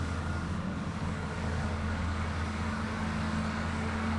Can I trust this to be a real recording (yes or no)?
no